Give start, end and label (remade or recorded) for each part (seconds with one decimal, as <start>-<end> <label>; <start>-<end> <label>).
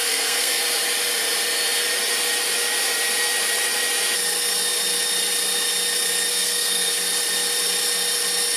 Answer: 0.0-0.6 remade; 0.6-6.3 recorded; 6.3-6.9 remade; 6.9-8.6 recorded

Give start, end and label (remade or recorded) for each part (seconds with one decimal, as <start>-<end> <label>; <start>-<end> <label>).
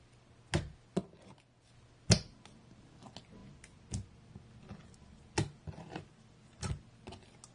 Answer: 0.0-7.5 recorded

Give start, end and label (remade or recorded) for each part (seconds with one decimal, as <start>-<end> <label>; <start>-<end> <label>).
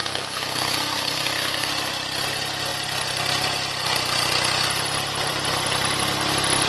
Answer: 0.0-1.7 remade; 1.7-6.7 recorded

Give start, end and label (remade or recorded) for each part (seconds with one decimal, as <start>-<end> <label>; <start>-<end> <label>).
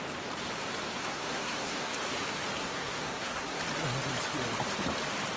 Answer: 0.0-1.1 recorded; 1.1-1.9 remade; 1.9-2.6 recorded; 2.6-3.6 remade; 3.6-5.4 recorded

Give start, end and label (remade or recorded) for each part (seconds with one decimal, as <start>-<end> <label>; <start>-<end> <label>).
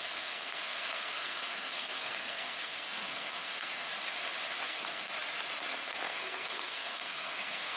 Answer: 0.0-3.9 remade; 3.9-4.6 recorded; 4.6-5.1 remade; 5.1-5.7 recorded; 5.7-7.8 remade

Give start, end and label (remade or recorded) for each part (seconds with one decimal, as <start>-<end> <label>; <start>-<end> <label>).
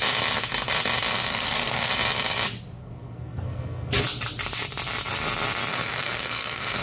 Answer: 0.0-1.3 recorded; 1.3-1.9 remade; 1.9-2.8 recorded; 2.8-3.9 remade; 3.9-5.7 recorded; 5.7-6.8 remade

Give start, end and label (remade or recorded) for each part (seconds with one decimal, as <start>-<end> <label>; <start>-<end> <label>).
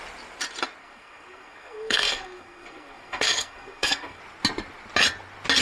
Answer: 0.0-0.8 recorded; 0.8-4.2 remade; 4.2-5.6 recorded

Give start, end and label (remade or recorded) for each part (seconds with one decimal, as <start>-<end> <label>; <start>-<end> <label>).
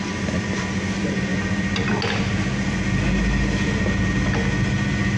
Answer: 0.0-5.2 recorded